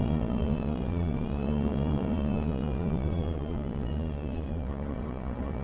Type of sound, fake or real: fake